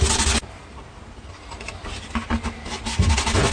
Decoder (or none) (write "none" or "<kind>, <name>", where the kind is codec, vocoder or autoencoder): none